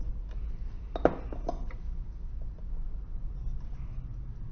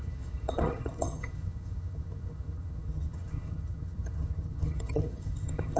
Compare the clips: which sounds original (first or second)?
first